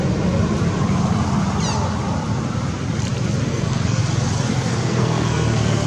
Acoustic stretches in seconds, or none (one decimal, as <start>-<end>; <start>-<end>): 0.0-3.5; 4.0-4.5